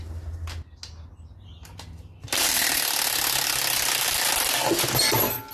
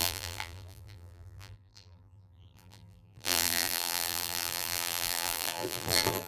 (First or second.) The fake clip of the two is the second